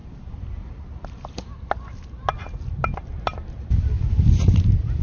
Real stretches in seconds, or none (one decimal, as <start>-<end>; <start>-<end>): 1.5-3.3; 4.1-5.0